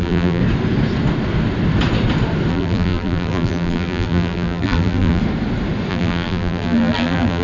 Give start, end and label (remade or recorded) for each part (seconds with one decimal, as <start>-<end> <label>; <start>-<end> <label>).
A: 0.0-0.4 remade; 0.4-2.5 recorded; 2.5-5.2 remade; 5.2-5.9 recorded; 5.9-7.4 remade